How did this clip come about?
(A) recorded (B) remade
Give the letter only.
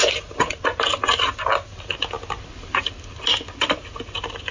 A